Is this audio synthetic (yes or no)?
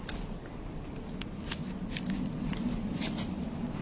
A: no